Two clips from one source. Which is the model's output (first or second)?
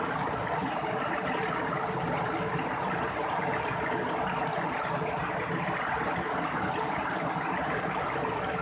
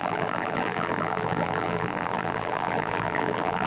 second